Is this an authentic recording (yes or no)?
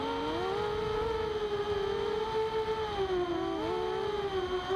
yes